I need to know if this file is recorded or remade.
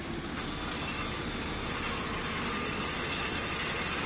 recorded